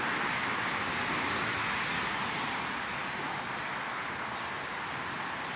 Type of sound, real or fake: real